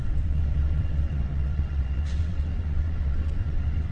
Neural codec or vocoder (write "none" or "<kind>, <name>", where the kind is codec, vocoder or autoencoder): vocoder, WaveNeXt